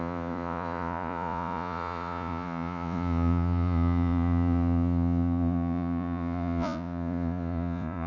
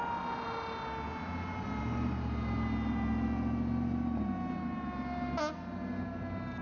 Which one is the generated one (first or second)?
first